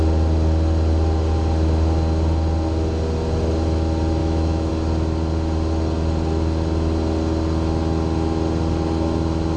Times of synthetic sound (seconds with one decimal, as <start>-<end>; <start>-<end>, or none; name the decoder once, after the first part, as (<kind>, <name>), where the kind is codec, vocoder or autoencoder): 4.2-4.7 (autoencoder, DAC-VAE)